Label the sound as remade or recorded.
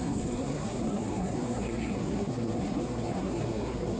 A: remade